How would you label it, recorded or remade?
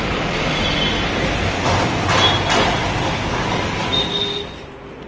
recorded